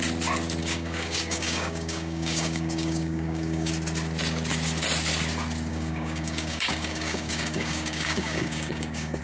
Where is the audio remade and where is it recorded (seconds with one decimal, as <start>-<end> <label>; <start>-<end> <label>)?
0.0-0.6 recorded; 0.6-3.7 remade; 3.7-5.7 recorded; 5.7-9.2 remade